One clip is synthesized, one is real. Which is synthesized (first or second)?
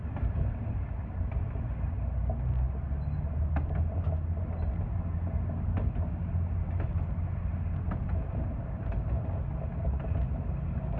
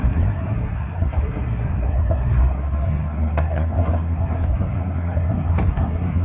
second